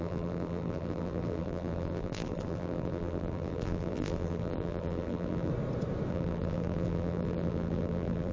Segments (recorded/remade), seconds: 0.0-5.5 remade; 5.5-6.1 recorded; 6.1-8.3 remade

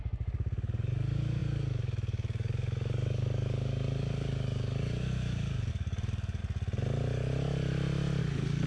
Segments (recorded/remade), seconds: 0.0-6.4 remade; 6.4-8.2 recorded; 8.2-8.7 remade

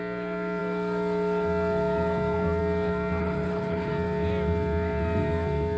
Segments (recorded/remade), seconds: 0.0-3.2 recorded; 3.2-3.9 remade; 3.9-5.8 recorded

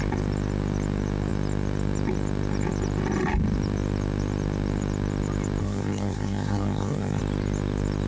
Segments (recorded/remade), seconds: 0.0-5.6 recorded; 5.6-7.2 remade; 7.2-8.1 recorded

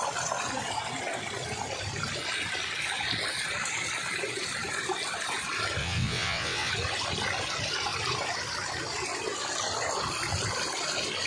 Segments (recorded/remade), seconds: 0.0-5.8 recorded; 5.8-6.7 remade; 6.7-11.3 recorded

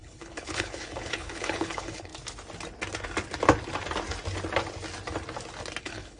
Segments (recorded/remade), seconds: 0.0-2.1 remade; 2.1-5.8 recorded; 5.8-6.2 remade